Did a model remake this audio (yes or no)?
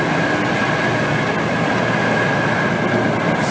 no